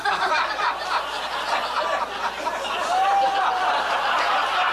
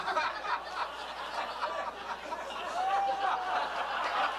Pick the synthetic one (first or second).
first